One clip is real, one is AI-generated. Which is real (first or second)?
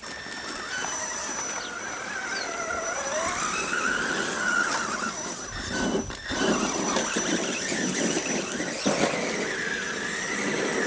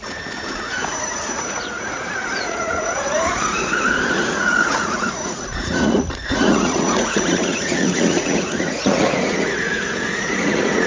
first